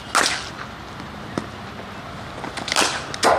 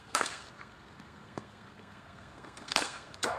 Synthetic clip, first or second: second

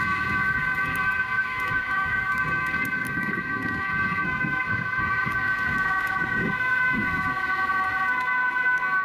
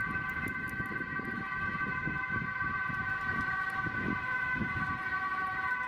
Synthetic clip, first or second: first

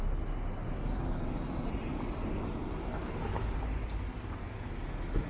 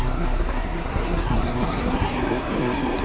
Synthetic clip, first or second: second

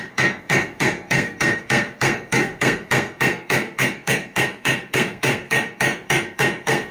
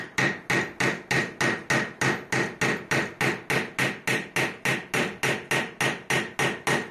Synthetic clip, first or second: first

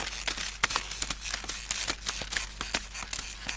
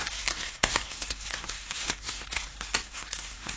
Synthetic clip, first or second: second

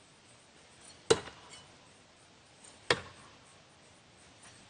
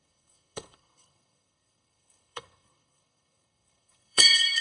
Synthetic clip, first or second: second